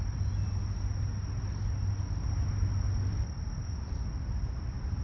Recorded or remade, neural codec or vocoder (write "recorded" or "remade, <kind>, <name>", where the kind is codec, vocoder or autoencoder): recorded